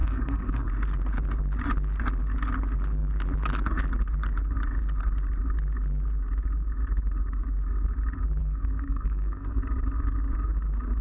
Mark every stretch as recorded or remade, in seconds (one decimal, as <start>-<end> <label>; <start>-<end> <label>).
0.0-0.7 remade; 0.7-8.4 recorded; 8.4-9.6 remade; 9.6-11.0 recorded